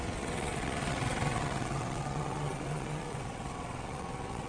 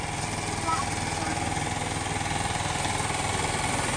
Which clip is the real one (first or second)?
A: second